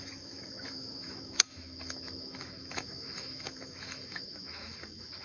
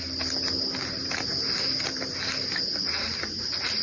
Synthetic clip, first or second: first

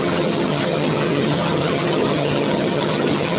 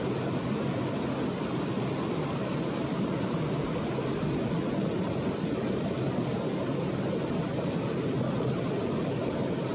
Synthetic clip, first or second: first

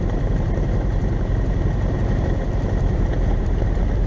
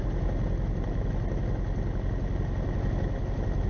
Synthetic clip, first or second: first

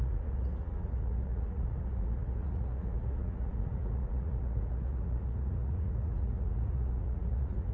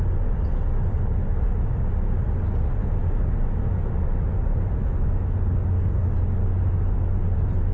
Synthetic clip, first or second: first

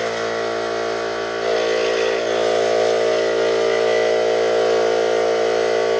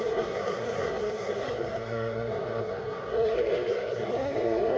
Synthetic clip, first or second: second